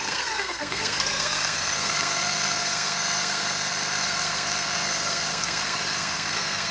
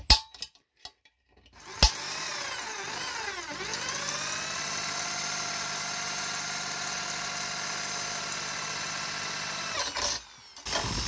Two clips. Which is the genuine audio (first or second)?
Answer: second